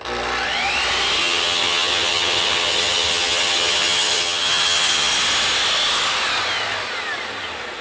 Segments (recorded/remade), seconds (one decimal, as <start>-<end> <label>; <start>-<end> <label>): 0.0-1.2 recorded; 1.2-5.1 remade; 5.1-7.8 recorded